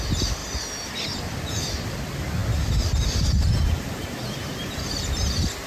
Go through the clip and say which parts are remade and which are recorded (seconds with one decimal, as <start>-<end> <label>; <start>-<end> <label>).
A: 0.0-5.7 recorded